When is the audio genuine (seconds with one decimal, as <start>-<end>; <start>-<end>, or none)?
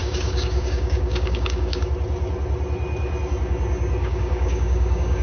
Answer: 1.9-4.0